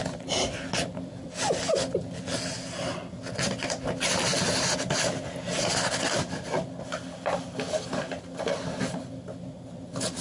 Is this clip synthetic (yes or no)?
no